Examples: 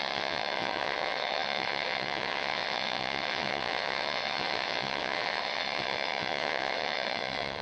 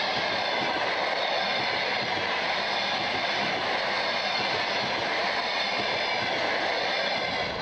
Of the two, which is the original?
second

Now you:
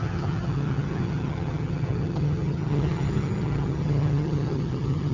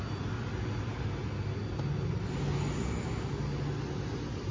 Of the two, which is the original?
second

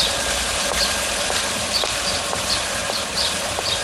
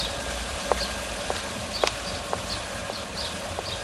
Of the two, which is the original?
second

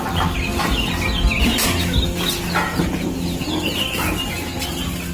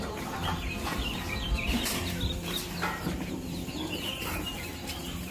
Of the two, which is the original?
first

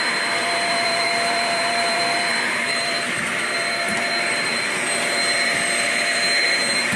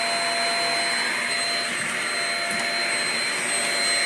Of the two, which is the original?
second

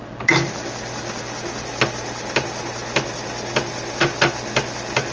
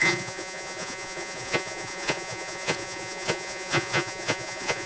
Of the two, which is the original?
first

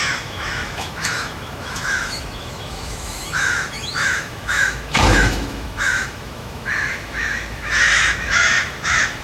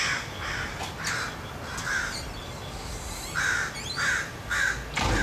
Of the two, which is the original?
second